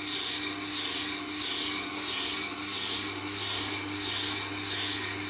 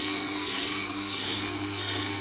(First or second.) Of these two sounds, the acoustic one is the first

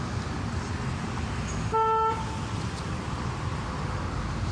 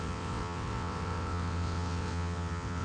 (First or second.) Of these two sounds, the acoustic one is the first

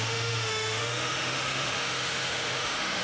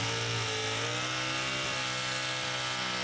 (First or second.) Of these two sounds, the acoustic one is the second